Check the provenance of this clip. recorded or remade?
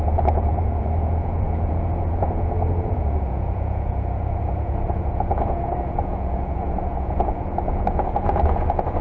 remade